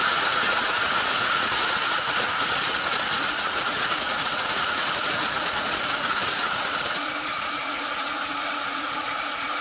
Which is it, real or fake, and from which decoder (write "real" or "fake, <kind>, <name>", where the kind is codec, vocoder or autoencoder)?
fake, vocoder, Vocos